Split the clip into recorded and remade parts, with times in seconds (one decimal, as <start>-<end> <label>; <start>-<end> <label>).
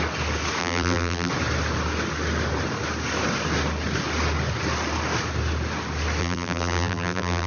0.0-0.6 recorded; 0.6-1.3 remade; 1.3-6.2 recorded; 6.2-7.5 remade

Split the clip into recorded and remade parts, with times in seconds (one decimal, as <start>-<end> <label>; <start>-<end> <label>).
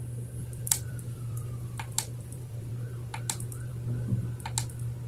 0.0-0.4 recorded; 0.4-2.7 remade; 2.7-5.1 recorded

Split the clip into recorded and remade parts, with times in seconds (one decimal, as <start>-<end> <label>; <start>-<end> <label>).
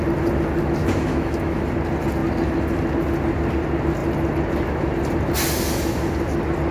0.0-0.8 recorded; 0.8-1.6 remade; 1.6-6.7 recorded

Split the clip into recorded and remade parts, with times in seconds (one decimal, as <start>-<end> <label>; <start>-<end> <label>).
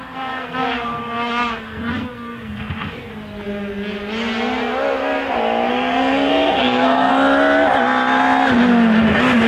0.0-3.1 remade; 3.1-5.7 recorded; 5.7-7.1 remade; 7.1-9.5 recorded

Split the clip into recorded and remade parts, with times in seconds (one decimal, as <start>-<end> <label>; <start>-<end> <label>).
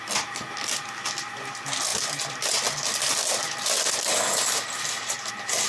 0.0-5.7 recorded